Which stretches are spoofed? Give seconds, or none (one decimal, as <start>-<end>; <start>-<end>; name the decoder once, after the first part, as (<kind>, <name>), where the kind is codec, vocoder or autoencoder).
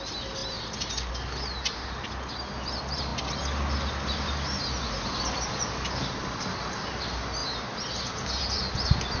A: none